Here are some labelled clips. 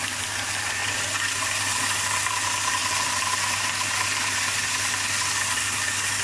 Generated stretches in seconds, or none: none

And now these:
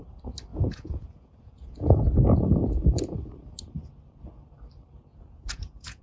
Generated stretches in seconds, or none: 0.5-2.2 (vocoder, Vocos); 5.1-6.0

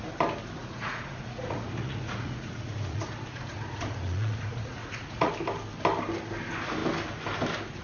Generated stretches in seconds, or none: 0.6-5.3 (vocoder, Vocos)

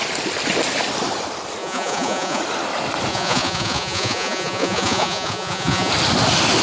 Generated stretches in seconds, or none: 1.6-2.4 (vocoder, Vocos); 3.1-5.9

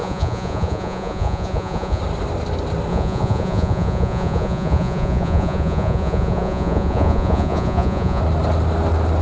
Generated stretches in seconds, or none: 0.0-2.0 (vocoder, Vocos); 2.9-8.2

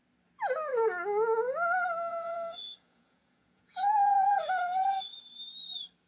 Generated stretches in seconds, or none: 2.1-5.2 (vocoder, Vocos)

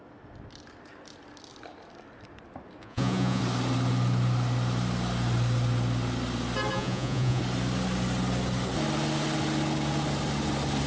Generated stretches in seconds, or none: 2.8-3.4 (vocoder, Vocos); 6.7-7.4

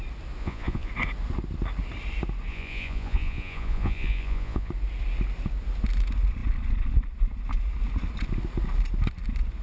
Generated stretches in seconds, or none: 0.4-0.9 (vocoder, Vocos); 2.5-4.7